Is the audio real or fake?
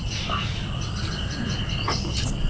real